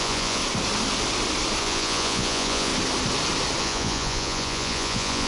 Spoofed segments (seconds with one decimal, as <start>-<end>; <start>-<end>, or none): 0.0-0.4; 1.6-2.7; 3.6-5.3